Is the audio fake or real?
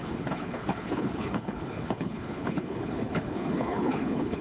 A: fake